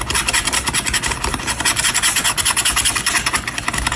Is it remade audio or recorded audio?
recorded